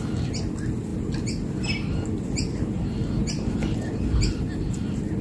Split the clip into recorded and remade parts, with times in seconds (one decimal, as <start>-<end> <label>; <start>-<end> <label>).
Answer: 0.0-5.2 recorded